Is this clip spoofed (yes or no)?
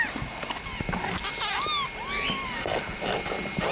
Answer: no